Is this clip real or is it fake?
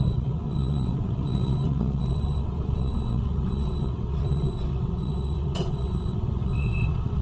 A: fake